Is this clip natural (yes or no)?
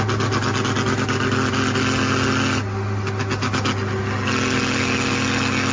yes